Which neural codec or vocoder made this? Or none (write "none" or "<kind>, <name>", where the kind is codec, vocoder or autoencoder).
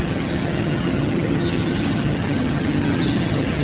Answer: vocoder, HiFi-GAN